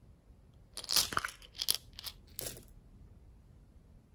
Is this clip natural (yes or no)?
yes